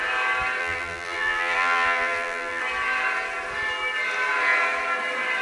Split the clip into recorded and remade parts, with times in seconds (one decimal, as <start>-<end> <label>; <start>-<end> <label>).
0.0-0.6 recorded; 0.6-2.6 remade; 2.6-5.4 recorded